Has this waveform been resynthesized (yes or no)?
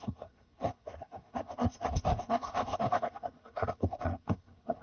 yes